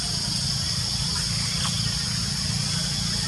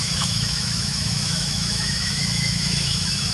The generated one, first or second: second